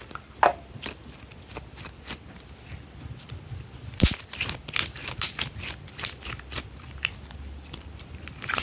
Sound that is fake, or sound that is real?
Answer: real